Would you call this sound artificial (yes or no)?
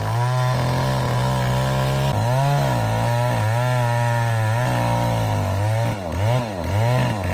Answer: no